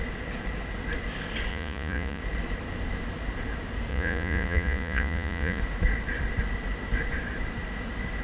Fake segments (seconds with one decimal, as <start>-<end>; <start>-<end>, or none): 1.5-2.2; 3.9-5.6